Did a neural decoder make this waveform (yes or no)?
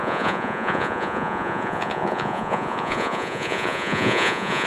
yes